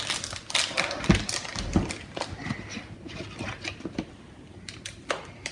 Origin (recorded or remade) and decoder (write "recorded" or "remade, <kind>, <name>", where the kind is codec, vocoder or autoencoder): recorded